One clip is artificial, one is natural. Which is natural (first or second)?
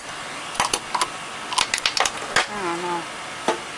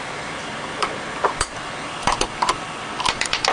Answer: first